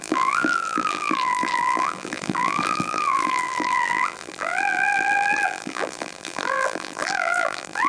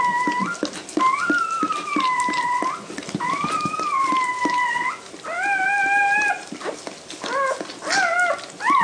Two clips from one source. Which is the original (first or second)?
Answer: second